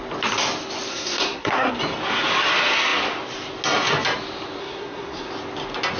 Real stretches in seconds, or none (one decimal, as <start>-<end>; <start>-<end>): 0.0-0.9; 1.7-4.6; 5.3-6.0